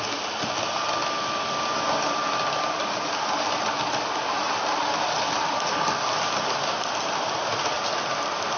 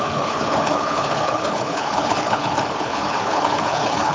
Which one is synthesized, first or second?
second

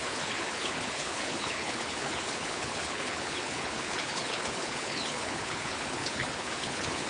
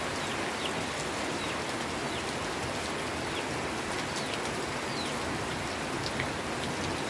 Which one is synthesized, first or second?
first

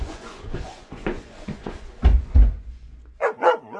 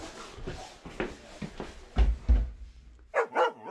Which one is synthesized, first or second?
first